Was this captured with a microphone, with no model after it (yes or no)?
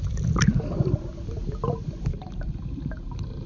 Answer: yes